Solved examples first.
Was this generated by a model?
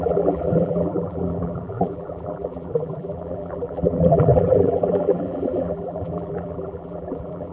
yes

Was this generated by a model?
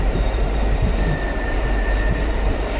yes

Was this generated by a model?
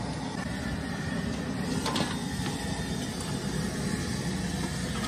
no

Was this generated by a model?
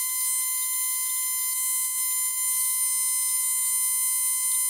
no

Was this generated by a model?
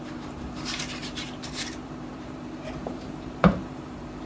yes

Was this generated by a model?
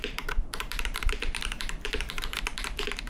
yes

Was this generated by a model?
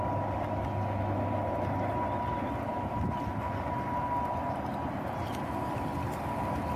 no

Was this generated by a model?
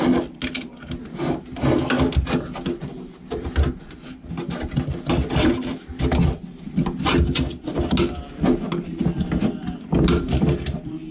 no